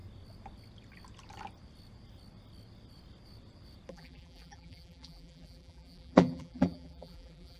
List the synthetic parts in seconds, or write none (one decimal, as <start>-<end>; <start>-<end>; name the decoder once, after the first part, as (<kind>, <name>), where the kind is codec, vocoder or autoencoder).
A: 3.9-7.6 (vocoder, BigVGAN v2)